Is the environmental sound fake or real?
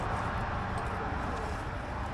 real